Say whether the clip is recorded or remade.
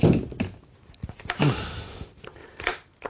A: recorded